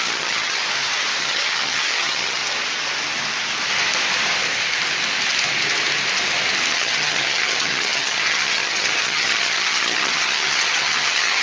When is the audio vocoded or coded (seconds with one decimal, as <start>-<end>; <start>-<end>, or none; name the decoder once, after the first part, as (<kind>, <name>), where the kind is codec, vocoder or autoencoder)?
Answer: 0.0-0.6 (vocoder, HiFi-GAN); 1.2-2.4; 6.7-11.4